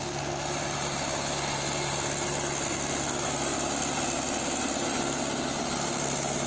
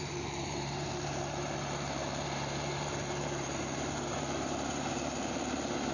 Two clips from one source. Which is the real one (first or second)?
first